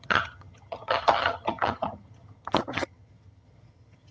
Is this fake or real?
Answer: fake